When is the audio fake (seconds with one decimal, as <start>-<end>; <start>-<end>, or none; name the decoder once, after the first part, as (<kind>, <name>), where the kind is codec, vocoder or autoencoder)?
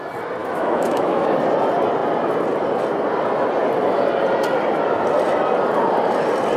0.4-1.3 (autoencoder, DAC-VAE)